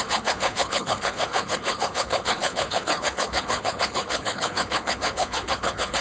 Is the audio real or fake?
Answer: fake